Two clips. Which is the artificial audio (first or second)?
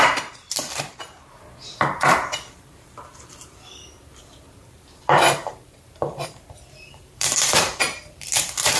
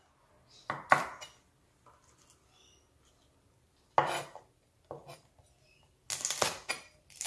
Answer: first